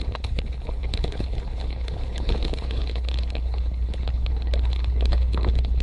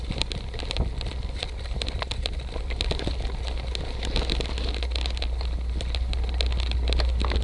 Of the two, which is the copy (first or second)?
first